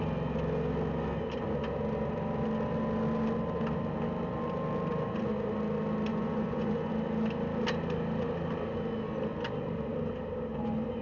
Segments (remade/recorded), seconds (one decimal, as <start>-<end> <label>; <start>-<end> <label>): 0.0-6.1 recorded; 6.1-6.9 remade; 6.9-11.0 recorded